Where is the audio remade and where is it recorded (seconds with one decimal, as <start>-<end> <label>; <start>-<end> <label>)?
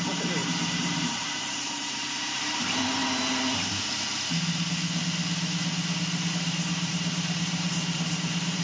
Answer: 0.0-3.0 remade; 3.0-6.3 recorded; 6.3-8.6 remade